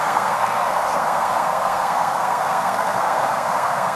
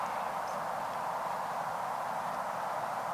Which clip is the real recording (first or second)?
second